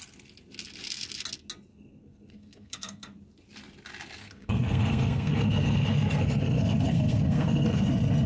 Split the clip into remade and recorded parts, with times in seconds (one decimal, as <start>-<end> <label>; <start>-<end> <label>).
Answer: 0.0-1.7 recorded; 1.7-3.2 remade; 3.2-4.2 recorded; 4.2-7.8 remade; 7.8-8.3 recorded